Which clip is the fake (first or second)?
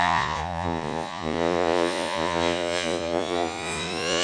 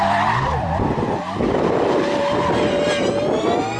first